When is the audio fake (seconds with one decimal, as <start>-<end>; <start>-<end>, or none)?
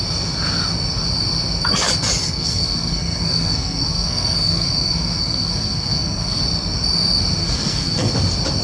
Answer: 2.2-6.4; 7.4-8.1